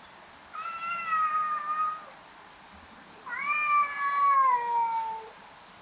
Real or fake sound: real